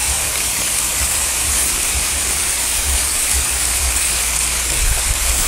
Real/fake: fake